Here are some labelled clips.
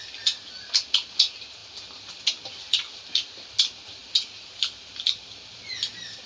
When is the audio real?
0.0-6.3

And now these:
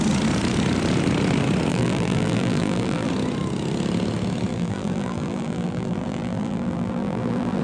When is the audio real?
0.0-1.7; 3.1-4.5

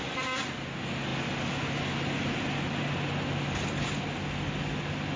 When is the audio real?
0.0-5.2